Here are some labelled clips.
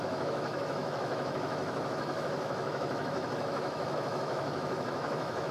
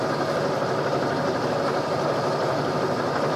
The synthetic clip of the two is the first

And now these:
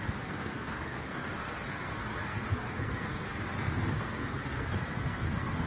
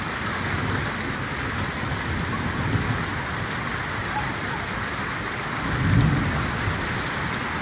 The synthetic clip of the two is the first